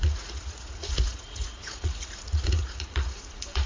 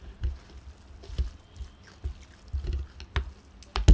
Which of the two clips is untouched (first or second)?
second